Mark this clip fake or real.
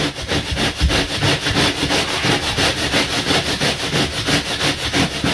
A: real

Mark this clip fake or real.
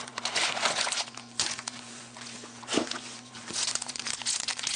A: fake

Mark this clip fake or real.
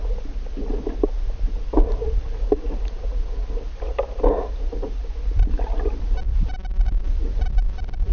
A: real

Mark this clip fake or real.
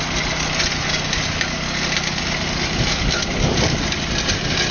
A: real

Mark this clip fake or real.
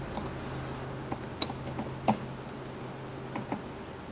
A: real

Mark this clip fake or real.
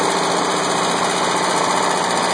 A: real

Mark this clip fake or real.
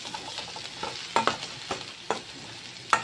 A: real